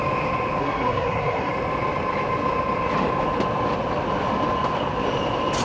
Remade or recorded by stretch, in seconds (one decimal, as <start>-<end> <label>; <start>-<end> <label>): 0.0-0.6 recorded; 0.6-1.5 remade; 1.5-5.6 recorded